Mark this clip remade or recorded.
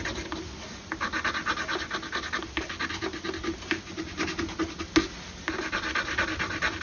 recorded